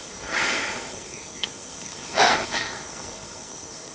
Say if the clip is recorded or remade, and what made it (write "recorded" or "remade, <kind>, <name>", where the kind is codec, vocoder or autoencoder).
remade, codec, SNAC